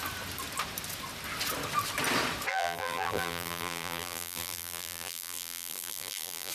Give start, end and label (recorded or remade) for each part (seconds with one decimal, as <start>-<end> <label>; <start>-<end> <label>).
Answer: 0.0-2.5 recorded; 2.5-6.5 remade